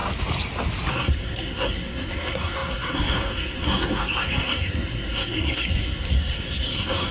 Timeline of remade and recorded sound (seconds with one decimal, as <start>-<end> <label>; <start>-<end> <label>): 0.0-0.9 recorded; 0.9-7.1 remade